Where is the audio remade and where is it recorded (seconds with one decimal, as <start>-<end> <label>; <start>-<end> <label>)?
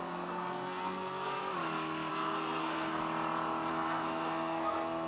0.0-1.4 remade; 1.4-2.1 recorded; 2.1-3.0 remade; 3.0-3.7 recorded; 3.7-5.1 remade